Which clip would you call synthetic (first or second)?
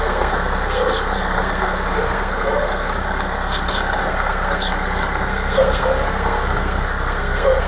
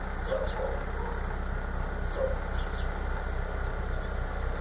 first